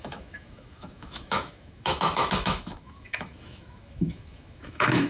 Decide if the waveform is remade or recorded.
remade